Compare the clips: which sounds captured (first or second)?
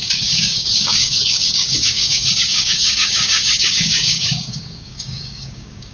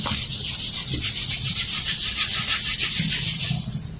second